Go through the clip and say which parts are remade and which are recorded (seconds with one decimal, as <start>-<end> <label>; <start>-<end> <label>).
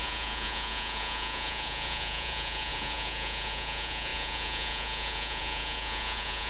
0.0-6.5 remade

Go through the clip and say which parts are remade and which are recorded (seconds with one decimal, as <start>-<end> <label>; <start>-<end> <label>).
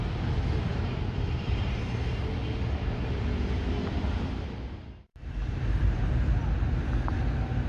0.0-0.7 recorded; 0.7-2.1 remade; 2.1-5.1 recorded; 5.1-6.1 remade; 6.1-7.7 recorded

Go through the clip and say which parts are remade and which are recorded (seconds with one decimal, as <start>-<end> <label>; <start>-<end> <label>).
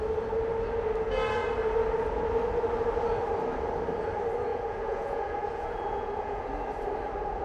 0.0-4.5 recorded; 4.5-6.5 remade; 6.5-7.4 recorded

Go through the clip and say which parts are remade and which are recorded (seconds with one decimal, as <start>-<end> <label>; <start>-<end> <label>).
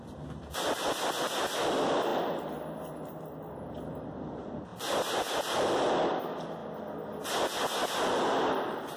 0.0-9.0 recorded